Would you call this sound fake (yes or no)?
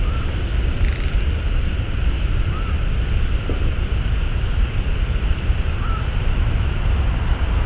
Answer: yes